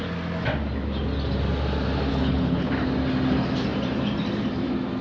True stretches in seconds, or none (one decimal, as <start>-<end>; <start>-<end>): 0.0-2.1; 2.7-5.0